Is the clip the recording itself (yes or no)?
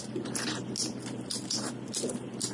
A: yes